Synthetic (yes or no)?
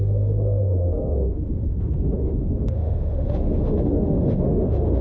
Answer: yes